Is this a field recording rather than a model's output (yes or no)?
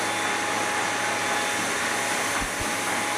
yes